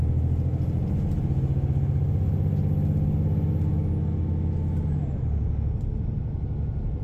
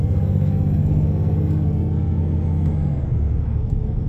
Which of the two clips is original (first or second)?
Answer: first